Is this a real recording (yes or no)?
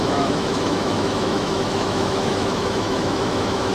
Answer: no